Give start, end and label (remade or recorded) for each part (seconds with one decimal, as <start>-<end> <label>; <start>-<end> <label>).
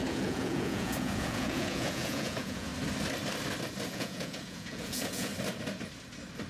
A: 0.0-2.7 remade; 2.7-3.9 recorded; 3.9-5.3 remade; 5.3-6.5 recorded